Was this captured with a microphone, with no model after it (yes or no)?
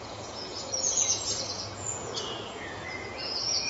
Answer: no